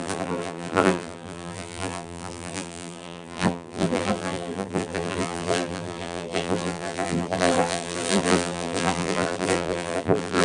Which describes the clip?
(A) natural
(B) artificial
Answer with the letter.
B